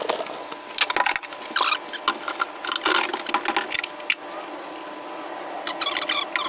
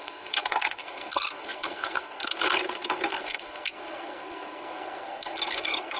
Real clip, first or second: first